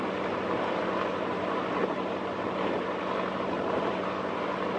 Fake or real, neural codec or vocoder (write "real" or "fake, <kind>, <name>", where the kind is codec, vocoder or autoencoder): real